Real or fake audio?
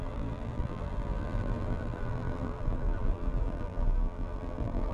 fake